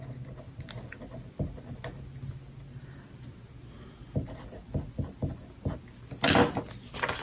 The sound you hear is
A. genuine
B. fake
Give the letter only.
A